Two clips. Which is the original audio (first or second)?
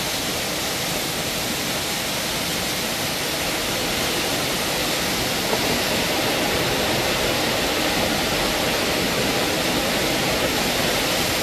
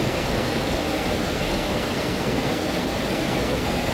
first